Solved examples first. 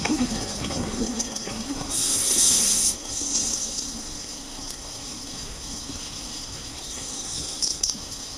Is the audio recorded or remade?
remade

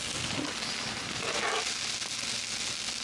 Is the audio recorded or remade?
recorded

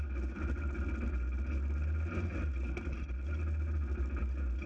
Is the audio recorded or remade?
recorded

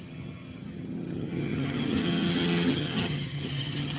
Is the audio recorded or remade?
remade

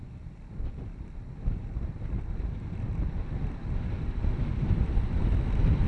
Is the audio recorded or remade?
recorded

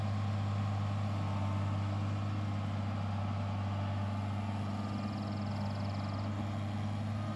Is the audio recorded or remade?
recorded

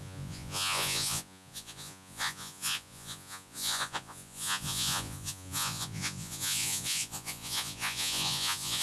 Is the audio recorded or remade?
remade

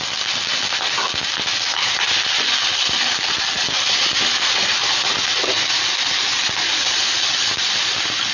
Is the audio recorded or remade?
recorded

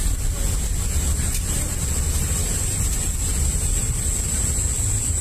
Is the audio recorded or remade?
recorded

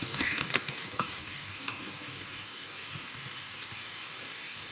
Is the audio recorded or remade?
remade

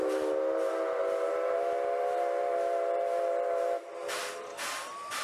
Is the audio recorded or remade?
recorded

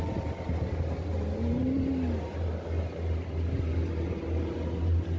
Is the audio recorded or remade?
recorded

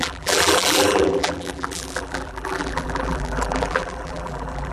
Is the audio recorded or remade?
remade